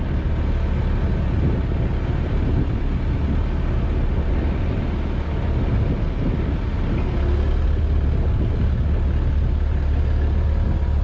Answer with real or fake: real